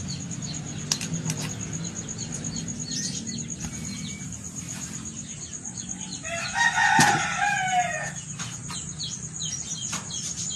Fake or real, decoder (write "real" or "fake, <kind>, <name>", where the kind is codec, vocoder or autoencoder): real